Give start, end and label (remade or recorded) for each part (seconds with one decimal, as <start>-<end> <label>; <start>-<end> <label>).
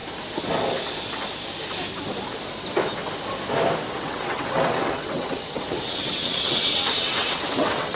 0.0-3.9 recorded; 3.9-8.0 remade